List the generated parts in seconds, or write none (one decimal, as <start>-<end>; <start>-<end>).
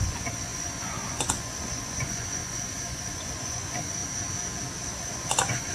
0.0-4.0; 4.9-5.7